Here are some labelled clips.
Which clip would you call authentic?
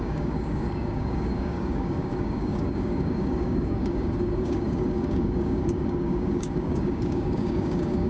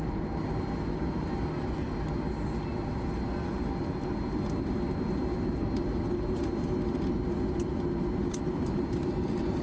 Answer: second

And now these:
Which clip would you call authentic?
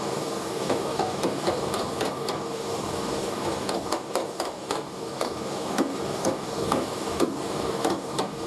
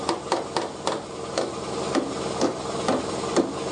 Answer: second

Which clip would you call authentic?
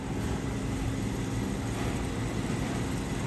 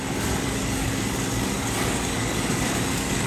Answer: first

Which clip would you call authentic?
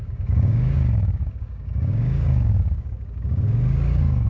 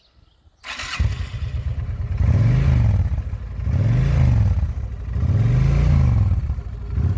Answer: second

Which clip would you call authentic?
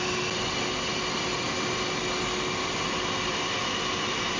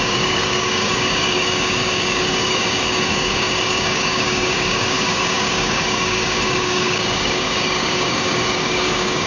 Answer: first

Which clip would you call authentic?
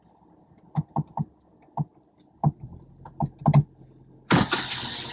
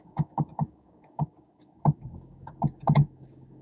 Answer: first